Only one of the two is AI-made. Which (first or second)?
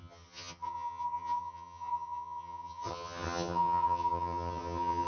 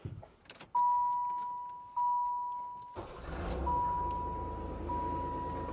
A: first